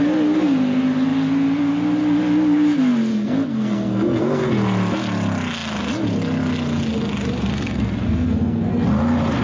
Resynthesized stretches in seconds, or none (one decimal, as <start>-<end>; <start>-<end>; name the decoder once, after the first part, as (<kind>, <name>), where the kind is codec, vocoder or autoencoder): 3.1-4.5 (codec, SNAC); 7.5-8.7